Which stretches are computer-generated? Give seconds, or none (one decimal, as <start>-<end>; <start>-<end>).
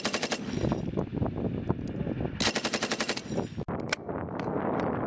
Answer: none